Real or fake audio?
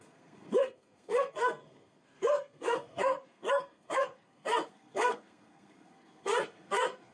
fake